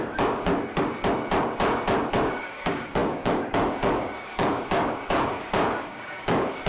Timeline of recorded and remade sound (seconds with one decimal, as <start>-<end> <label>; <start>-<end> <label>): 0.0-0.5 remade; 0.5-2.1 recorded; 2.1-6.7 remade

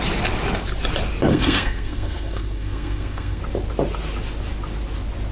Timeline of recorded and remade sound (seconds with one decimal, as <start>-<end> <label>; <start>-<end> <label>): 0.0-1.3 recorded; 1.3-3.4 remade; 3.4-5.3 recorded

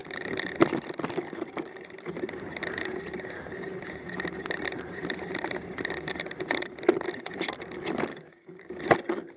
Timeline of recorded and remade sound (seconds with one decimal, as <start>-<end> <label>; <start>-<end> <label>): 0.0-8.1 recorded; 8.1-8.8 remade; 8.8-9.4 recorded

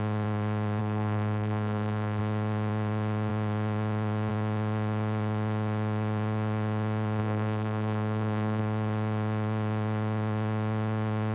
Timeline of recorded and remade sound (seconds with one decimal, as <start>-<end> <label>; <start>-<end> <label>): 0.0-0.8 recorded; 0.8-2.2 remade; 2.2-7.2 recorded; 7.2-8.6 remade; 8.6-11.3 recorded

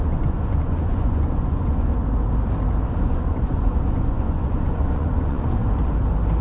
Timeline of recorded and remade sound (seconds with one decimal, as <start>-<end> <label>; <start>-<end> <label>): 0.0-1.9 remade; 1.9-2.9 recorded; 2.9-5.6 remade; 5.6-6.4 recorded

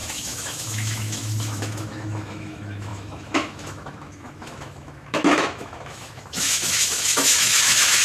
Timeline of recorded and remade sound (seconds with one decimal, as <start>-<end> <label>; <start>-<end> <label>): 0.0-8.0 remade

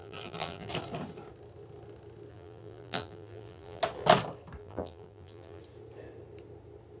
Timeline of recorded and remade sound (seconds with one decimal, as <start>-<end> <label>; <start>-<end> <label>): 0.0-0.7 remade; 0.7-2.3 recorded; 2.3-3.8 remade; 3.8-4.6 recorded; 4.6-5.6 remade; 5.6-7.0 recorded